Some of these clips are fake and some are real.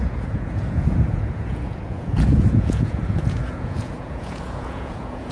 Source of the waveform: fake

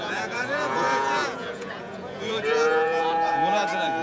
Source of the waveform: fake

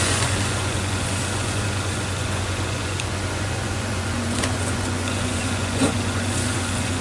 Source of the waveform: fake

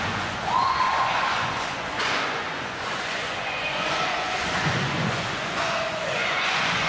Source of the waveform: fake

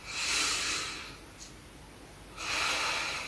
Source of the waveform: real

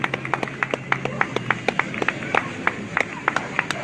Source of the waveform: real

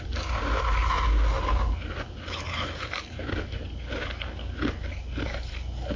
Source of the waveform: real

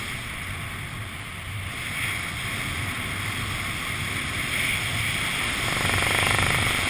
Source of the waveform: real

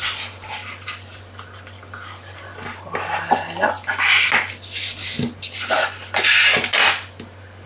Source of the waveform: real